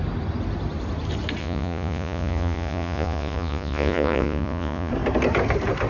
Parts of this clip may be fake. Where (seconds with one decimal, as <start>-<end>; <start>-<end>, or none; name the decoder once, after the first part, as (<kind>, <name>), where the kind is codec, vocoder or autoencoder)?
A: 1.4-4.9 (vocoder, Vocos)